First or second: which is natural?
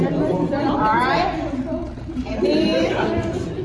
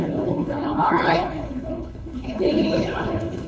first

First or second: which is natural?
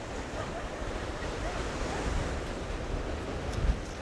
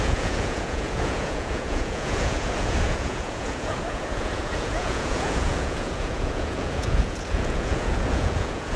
first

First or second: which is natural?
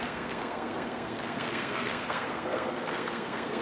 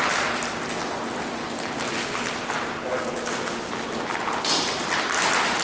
second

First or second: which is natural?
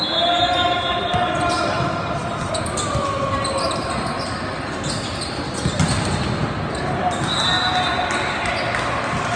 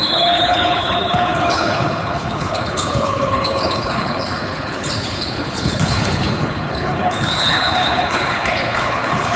first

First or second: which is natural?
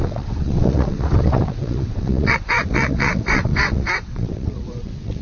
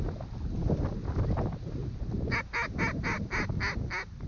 second